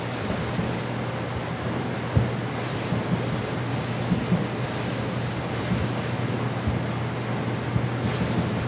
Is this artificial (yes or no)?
no